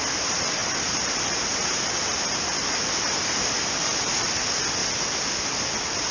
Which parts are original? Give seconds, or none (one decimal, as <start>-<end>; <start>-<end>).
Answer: 4.8-6.1